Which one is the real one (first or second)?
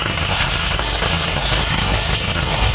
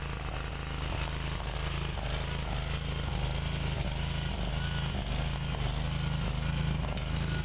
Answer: second